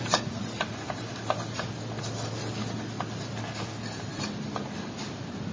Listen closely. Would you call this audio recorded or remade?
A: recorded